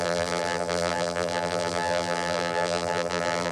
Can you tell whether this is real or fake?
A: fake